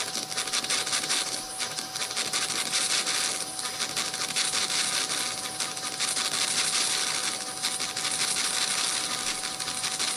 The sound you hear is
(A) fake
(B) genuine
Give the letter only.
B